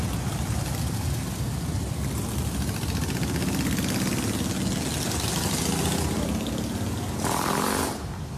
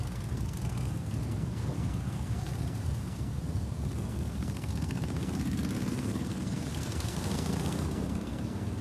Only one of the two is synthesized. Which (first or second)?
second